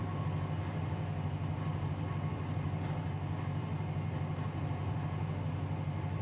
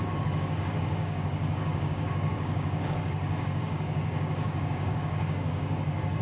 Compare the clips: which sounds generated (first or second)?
second